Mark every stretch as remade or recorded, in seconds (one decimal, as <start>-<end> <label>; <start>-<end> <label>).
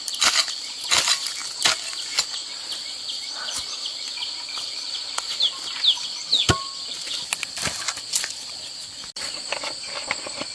0.0-10.5 recorded